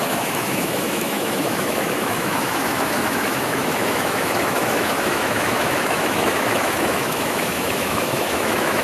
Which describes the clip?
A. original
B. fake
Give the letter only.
B